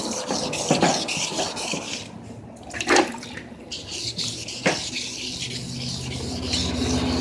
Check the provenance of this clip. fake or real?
real